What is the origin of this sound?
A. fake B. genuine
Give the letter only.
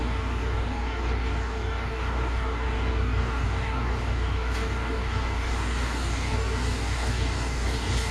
A